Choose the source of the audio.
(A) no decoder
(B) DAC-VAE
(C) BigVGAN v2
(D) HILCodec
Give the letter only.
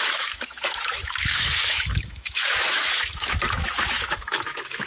B